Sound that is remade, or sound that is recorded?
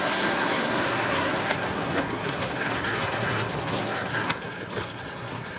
remade